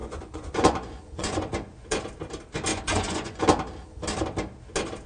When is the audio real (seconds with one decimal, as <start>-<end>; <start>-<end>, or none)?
2.0-2.7; 3.4-5.1